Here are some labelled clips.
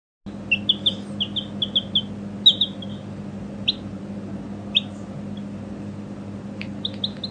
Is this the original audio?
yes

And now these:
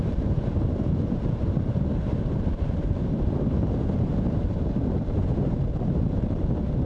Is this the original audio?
no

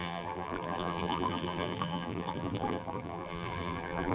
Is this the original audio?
no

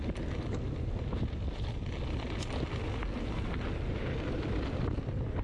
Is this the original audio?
yes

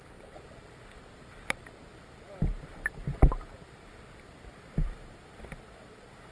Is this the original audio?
no